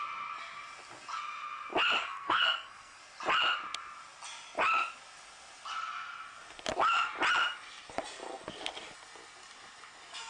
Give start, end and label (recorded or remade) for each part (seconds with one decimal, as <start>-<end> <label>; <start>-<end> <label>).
0.0-2.0 recorded; 2.0-3.0 remade; 3.0-10.3 recorded